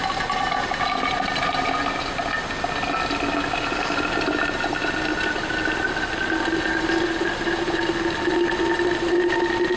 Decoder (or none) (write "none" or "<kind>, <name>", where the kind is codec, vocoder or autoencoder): none